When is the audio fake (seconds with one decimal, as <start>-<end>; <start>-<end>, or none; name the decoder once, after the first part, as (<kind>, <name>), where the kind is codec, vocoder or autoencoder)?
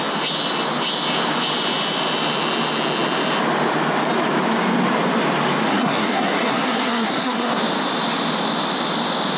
5.7-7.6 (codec, SNAC)